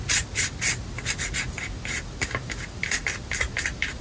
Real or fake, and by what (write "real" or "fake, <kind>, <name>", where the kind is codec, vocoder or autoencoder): real